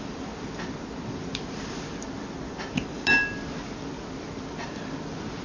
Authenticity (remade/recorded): recorded